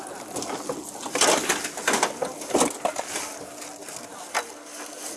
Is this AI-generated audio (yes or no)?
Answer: no